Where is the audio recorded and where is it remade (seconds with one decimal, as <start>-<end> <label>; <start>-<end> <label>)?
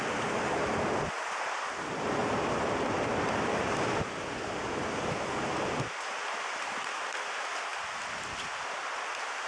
0.0-9.5 recorded